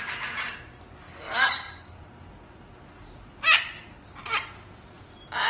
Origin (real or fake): real